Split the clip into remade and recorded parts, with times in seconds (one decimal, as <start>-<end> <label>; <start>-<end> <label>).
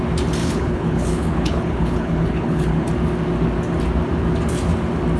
0.0-0.4 recorded; 0.4-2.9 remade; 2.9-5.2 recorded